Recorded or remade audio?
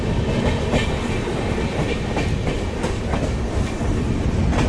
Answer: recorded